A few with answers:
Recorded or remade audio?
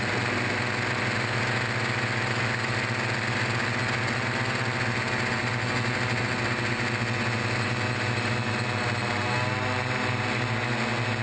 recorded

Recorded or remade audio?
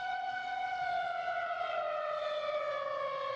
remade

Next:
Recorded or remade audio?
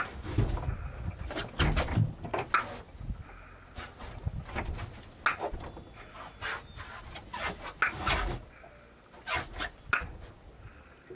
recorded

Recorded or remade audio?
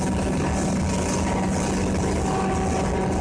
recorded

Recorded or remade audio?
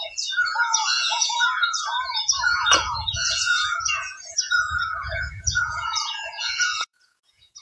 remade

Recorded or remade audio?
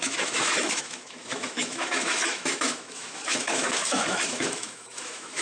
remade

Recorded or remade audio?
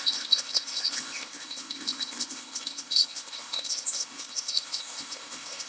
remade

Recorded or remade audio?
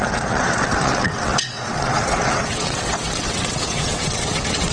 remade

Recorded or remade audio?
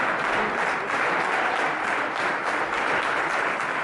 recorded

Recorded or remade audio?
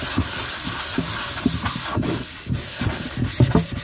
recorded